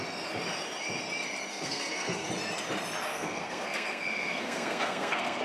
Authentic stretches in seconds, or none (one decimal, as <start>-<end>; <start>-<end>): 0.0-1.5; 2.3-3.1